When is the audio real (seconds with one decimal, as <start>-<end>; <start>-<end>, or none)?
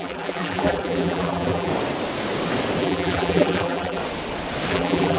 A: 1.7-2.8; 4.0-4.7